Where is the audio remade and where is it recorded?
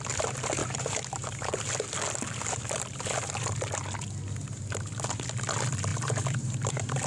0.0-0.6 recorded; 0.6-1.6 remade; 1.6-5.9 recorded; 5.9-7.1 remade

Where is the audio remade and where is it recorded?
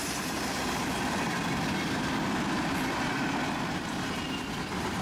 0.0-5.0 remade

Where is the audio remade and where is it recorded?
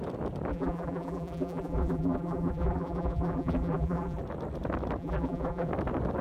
0.0-0.5 recorded; 0.5-4.2 remade; 4.2-5.0 recorded; 5.0-5.7 remade; 5.7-6.2 recorded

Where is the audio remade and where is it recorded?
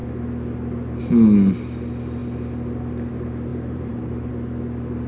0.0-3.5 recorded; 3.5-4.3 remade; 4.3-5.1 recorded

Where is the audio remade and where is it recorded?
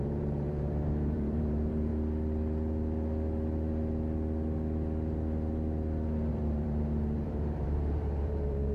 0.0-1.9 remade; 1.9-6.3 recorded; 6.3-8.7 remade